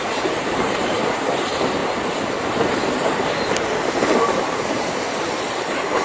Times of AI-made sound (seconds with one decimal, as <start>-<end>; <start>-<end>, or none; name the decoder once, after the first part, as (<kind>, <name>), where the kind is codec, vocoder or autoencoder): 0.0-6.0 (vocoder, BigVGAN v2)